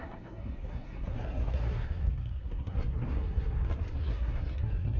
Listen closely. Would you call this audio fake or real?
fake